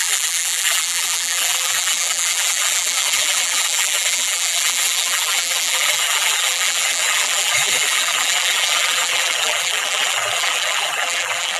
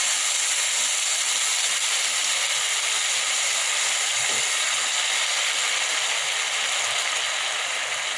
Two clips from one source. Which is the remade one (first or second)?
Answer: first